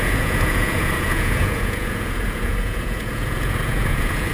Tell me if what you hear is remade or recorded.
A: remade